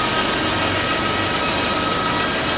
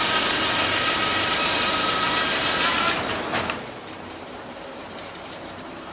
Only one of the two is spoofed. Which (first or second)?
second